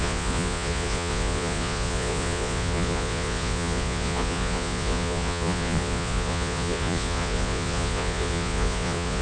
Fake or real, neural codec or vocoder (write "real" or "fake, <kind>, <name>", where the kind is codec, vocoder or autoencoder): fake, vocoder, Vocos